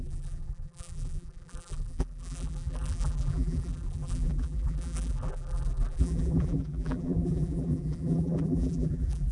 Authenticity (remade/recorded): remade